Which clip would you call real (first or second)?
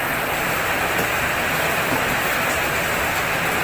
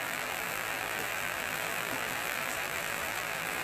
first